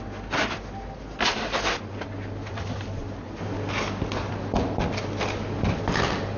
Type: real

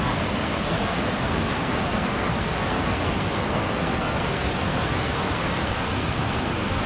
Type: fake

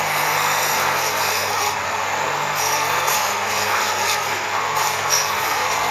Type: fake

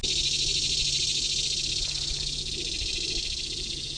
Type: real